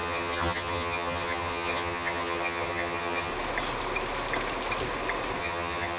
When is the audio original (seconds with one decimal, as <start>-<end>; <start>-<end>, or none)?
3.3-5.4

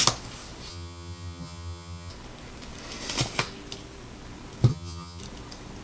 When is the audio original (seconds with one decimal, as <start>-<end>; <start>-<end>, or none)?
0.0-0.7; 2.1-4.7; 5.2-5.8